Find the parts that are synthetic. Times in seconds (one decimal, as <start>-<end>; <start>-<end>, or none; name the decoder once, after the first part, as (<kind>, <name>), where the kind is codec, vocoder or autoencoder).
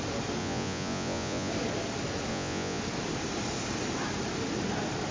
0.4-1.5 (vocoder, Vocos); 2.3-2.8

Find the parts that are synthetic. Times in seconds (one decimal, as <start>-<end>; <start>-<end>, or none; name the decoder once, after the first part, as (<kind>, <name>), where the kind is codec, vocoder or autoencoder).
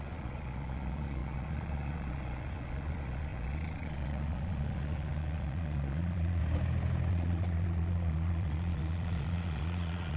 0.0-6.4 (vocoder, Vocos); 7.1-10.2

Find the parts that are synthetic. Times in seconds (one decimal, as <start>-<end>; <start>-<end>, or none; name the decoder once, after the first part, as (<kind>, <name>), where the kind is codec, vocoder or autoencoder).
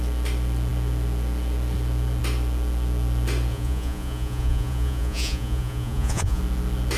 3.5-6.4 (vocoder, Vocos)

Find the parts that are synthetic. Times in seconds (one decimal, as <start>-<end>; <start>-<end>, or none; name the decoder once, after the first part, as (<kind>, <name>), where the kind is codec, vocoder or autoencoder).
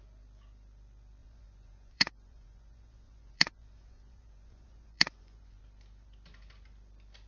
1.2-5.6 (vocoder, Vocos)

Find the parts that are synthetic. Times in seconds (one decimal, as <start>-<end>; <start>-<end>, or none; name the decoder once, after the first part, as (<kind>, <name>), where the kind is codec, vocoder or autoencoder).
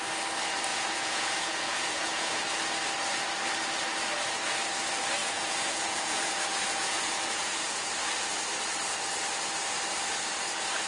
0.7-2.4 (vocoder, Vocos); 5.2-7.9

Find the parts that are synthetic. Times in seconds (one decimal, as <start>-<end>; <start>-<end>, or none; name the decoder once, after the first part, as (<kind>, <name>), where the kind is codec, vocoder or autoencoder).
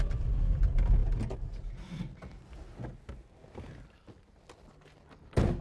none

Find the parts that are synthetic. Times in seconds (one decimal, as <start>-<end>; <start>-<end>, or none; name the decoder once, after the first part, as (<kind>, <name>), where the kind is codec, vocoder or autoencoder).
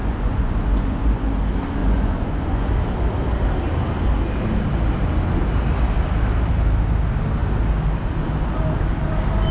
0.0-1.3 (vocoder, Vocos); 1.8-2.7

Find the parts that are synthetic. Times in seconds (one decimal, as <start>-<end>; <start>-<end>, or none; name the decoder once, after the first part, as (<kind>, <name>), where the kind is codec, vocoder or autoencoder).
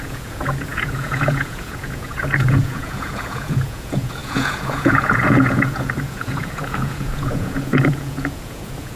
0.0-9.0 (vocoder, Vocos)